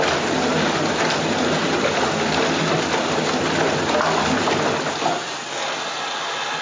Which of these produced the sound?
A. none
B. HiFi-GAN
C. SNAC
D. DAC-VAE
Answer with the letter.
A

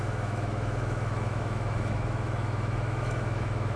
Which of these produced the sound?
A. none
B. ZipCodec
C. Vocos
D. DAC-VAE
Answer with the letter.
D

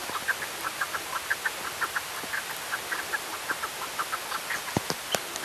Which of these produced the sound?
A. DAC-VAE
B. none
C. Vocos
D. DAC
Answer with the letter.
B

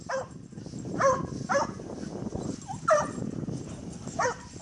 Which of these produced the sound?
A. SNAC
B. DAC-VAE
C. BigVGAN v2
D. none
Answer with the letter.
D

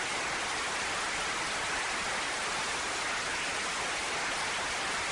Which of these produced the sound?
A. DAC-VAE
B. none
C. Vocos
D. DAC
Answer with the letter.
B